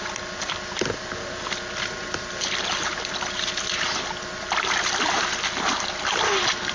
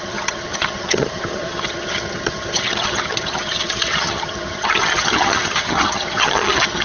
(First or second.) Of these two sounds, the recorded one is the first